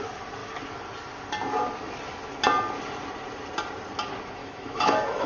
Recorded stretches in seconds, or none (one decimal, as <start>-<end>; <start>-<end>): 0.0-4.4